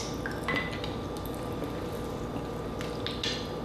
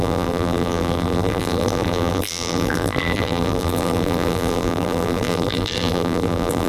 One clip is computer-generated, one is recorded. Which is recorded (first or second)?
first